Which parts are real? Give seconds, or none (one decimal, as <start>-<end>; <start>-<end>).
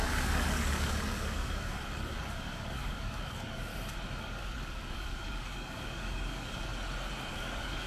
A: 3.7-4.2; 6.7-7.3